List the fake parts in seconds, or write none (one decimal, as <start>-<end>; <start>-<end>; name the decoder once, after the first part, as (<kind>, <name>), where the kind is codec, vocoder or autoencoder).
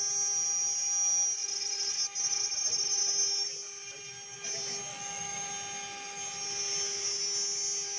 4.9-5.5 (autoencoder, DAC-VAE)